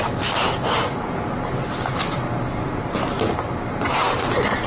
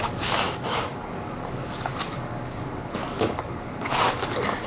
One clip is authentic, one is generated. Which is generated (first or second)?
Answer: second